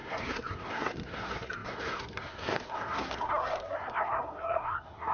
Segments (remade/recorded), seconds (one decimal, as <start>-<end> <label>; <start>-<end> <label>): 0.0-5.1 remade